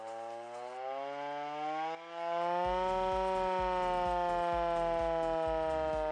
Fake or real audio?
real